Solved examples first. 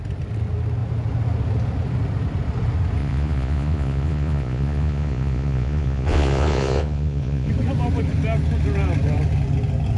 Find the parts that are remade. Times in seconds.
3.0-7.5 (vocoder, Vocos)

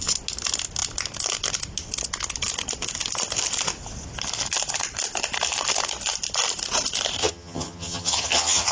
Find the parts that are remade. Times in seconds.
7.2-8.7 (vocoder, HiFi-GAN)

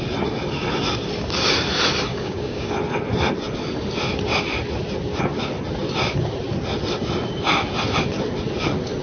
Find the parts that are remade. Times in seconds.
2.1-2.7 (codec, DAC)